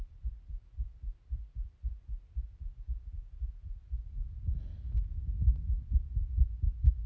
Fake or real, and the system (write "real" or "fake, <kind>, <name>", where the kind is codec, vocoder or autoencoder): real